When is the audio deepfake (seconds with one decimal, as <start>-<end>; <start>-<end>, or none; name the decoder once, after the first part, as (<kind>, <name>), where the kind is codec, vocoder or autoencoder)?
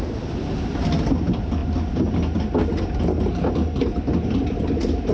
none